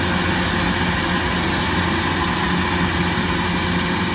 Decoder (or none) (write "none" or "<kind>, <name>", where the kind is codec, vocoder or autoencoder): none